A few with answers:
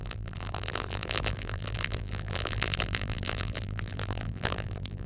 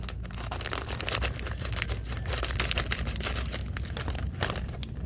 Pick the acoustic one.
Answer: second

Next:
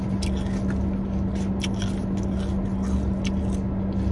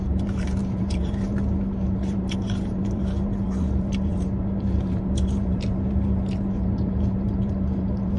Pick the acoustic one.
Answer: first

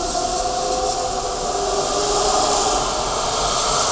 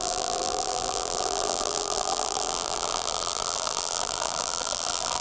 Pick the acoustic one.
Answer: first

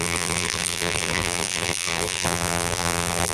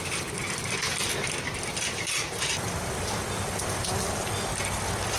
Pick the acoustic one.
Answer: second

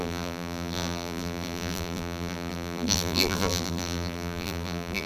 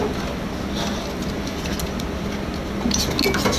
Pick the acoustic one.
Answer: second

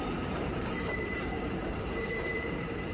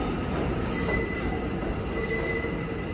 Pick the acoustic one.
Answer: second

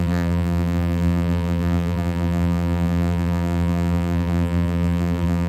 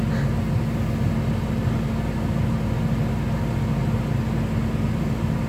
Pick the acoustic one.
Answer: second